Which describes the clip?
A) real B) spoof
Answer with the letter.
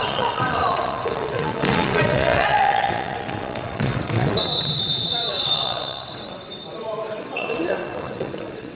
B